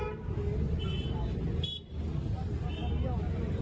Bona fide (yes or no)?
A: yes